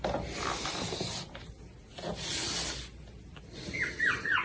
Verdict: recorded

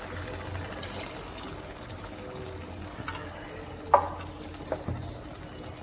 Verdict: recorded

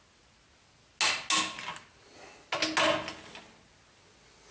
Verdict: recorded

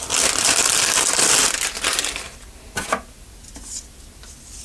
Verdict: recorded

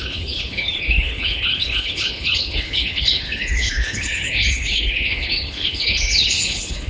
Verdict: remade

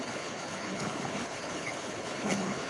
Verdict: remade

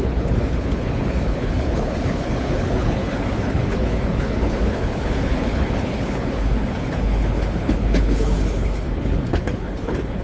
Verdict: remade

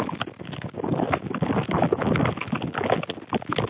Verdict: recorded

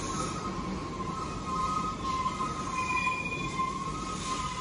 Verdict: recorded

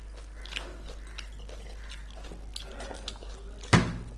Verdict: recorded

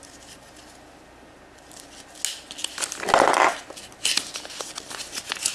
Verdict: recorded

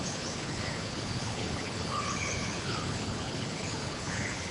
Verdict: remade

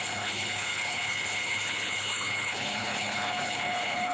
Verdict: remade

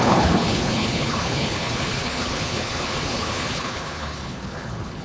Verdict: remade